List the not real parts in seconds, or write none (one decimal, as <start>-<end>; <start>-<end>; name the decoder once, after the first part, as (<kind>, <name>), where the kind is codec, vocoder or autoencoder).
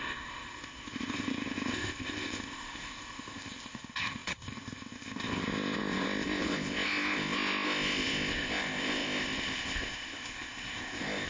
0.0-11.3 (codec, ZipCodec)